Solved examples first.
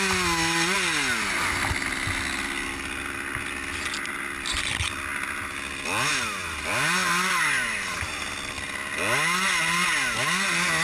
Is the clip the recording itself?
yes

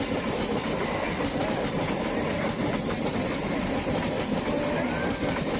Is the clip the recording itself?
no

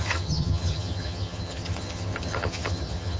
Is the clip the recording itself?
no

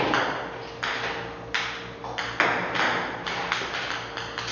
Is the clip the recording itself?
yes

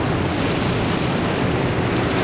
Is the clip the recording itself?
yes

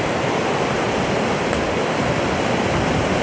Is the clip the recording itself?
yes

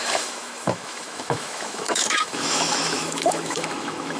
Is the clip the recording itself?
no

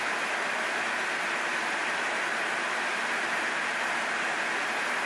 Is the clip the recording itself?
yes